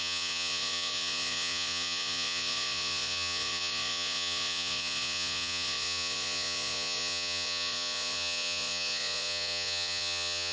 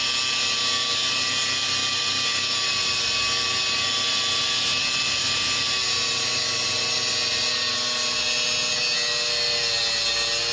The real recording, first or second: second